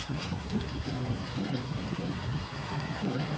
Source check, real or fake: fake